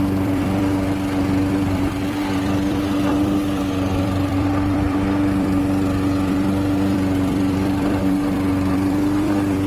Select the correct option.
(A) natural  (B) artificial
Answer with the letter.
B